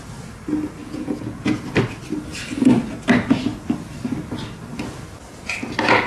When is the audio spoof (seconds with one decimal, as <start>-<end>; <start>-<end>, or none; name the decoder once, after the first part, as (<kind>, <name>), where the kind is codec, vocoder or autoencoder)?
0.8-1.6 (vocoder, Vocos)